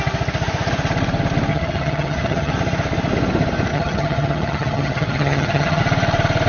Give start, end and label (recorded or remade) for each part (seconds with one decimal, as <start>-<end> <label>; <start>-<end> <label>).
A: 0.0-1.5 recorded; 1.5-2.5 remade; 2.5-3.7 recorded; 3.7-5.8 remade; 5.8-6.5 recorded